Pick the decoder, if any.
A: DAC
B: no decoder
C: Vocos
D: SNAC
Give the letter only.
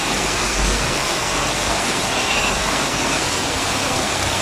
D